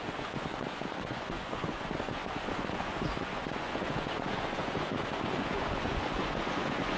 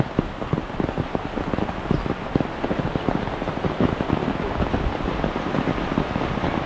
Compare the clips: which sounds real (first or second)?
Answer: second